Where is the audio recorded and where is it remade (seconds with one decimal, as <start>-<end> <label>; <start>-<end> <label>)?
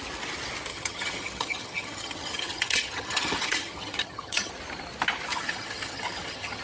0.0-0.7 recorded; 0.7-4.5 remade; 4.5-5.3 recorded; 5.3-6.6 remade